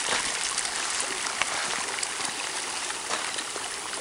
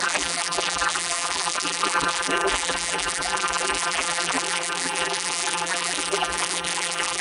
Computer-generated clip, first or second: second